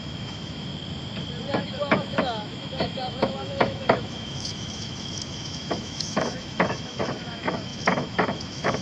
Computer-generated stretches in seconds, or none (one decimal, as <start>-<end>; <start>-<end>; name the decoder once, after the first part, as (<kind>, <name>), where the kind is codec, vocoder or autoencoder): 0.0-0.7 (autoencoder, DAC-VAE); 1.5-8.8